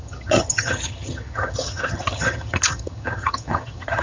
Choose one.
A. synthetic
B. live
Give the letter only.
A